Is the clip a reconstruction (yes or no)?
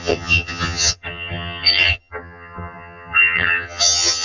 yes